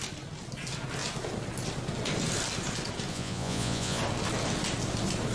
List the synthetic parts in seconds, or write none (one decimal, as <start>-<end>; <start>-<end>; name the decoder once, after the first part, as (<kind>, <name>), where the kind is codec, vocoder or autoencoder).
3.1-4.0 (vocoder, Vocos)